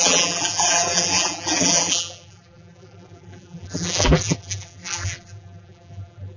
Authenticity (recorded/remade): remade